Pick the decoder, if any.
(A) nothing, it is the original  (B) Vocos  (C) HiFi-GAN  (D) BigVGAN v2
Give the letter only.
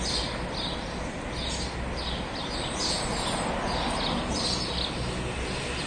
A